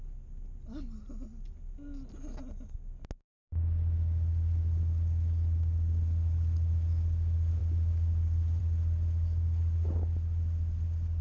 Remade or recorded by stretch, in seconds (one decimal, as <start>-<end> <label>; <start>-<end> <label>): 0.0-11.2 recorded